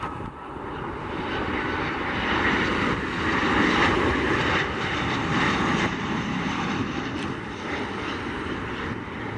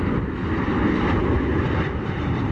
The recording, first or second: second